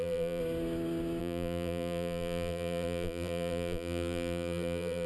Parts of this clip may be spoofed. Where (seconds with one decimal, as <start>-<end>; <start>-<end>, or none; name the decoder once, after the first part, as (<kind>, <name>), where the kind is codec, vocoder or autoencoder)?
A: 0.0-0.4 (vocoder, BigVGAN v2); 1.2-5.1

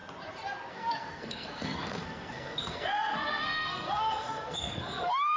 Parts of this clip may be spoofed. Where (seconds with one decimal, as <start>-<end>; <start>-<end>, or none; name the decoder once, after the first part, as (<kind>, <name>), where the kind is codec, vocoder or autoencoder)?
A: 0.7-5.4 (codec, SNAC)

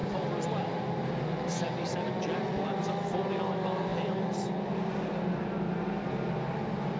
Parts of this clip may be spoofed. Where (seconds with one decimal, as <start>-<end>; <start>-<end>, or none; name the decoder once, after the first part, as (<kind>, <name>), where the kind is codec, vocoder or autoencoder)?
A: none

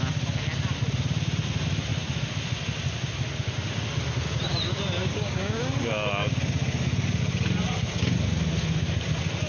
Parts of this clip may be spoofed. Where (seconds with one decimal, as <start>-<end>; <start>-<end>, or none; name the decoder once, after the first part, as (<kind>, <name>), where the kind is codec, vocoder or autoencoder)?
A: 5.0-5.6 (codec, DAC)

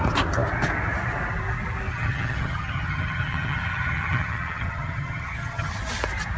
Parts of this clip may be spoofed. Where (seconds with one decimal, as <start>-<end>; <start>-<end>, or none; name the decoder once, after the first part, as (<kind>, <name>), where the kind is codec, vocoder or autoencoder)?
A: 1.9-5.7 (vocoder, HiFi-GAN)